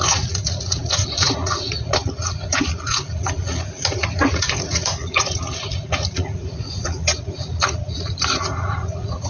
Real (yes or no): no